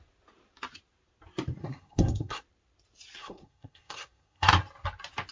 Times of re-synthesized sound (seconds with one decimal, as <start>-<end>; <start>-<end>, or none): 1.6-2.4; 3.2-4.5